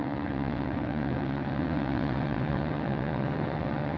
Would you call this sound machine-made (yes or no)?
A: yes